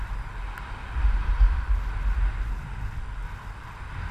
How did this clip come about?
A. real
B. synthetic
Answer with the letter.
A